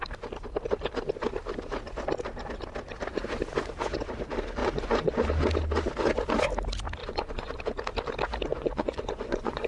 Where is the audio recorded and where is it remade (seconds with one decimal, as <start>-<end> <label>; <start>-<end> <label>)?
0.0-4.6 recorded; 4.6-5.1 remade; 5.1-7.0 recorded; 7.0-7.6 remade; 7.6-8.5 recorded; 8.5-9.7 remade